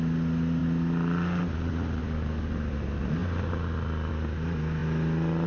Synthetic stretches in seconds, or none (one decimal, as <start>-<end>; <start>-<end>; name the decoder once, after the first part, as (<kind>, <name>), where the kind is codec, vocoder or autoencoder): 2.0-2.5 (codec, DAC)

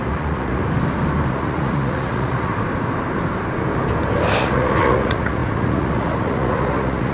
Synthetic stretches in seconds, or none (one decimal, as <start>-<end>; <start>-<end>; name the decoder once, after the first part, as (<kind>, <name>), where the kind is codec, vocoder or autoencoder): 0.0-0.6 (vocoder, Vocos); 1.3-2.5; 4.4-7.1

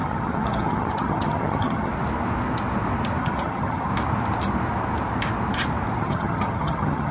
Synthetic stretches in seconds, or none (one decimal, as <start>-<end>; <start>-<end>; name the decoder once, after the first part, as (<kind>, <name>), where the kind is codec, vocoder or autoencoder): 0.0-1.9 (vocoder, HiFi-GAN); 3.2-3.9; 6.0-7.1

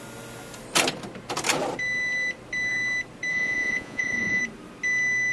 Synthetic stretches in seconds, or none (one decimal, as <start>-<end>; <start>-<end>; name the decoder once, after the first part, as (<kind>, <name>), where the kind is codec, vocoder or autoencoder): 3.3-4.4 (vocoder, Vocos)

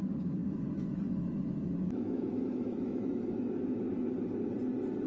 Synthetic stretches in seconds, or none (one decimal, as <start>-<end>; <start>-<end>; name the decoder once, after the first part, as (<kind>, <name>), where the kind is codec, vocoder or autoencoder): 0.0-3.9 (autoencoder, DAC-VAE)